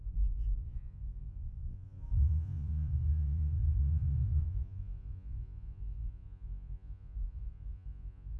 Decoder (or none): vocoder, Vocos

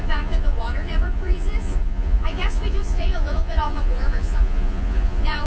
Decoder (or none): vocoder, Vocos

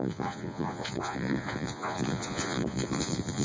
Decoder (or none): vocoder, Vocos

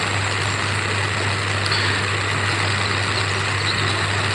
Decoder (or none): none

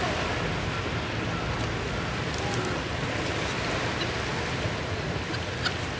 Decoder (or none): none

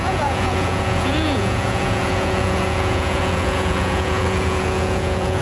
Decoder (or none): vocoder, Vocos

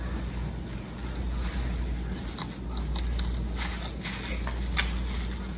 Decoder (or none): none